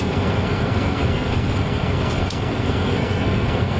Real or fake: fake